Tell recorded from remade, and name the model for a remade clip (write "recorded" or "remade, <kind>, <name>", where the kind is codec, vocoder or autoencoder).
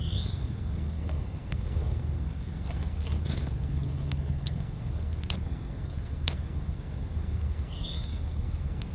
remade, codec, SNAC